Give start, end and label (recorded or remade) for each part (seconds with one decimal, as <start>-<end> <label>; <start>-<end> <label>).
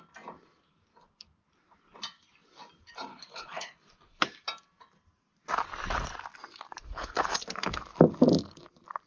0.0-3.1 recorded; 3.1-4.2 remade; 4.2-6.8 recorded; 6.8-7.4 remade; 7.4-9.1 recorded